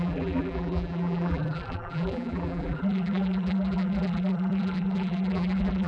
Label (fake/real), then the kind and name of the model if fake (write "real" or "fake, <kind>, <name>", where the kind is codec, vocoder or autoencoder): fake, vocoder, BigVGAN v2